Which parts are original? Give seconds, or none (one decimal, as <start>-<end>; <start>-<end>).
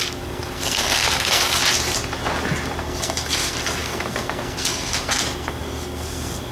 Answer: 1.6-2.8